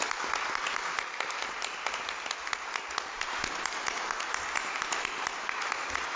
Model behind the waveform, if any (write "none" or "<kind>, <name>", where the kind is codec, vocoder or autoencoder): none